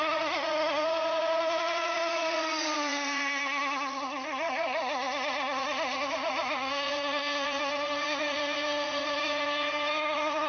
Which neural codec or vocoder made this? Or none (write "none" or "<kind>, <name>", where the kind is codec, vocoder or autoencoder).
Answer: vocoder, Vocos